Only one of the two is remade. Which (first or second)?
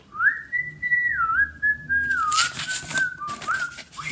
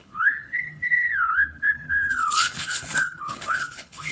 second